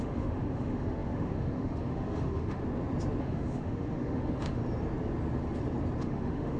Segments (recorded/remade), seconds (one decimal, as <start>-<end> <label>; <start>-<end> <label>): 0.0-2.6 remade; 2.6-3.2 recorded; 3.2-4.6 remade; 4.6-6.0 recorded; 6.0-6.6 remade